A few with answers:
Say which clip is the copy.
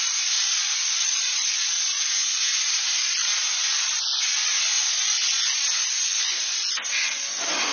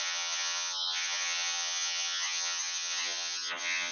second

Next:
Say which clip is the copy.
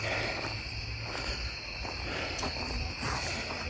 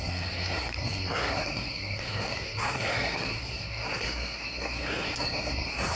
second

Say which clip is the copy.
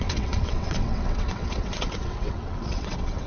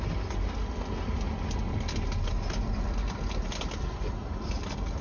first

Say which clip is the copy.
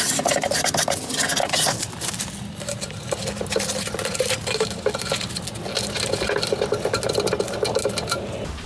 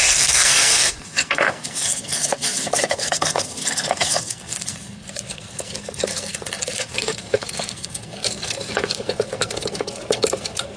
second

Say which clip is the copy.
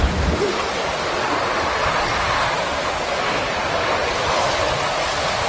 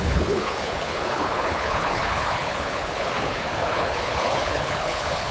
second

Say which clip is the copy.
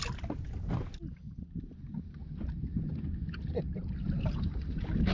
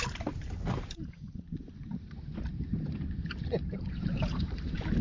second